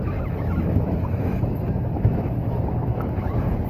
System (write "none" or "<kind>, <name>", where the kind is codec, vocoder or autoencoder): autoencoder, DAC-VAE